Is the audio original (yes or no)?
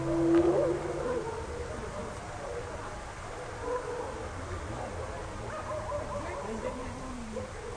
yes